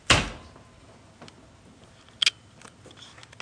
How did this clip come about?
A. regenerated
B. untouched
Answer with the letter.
B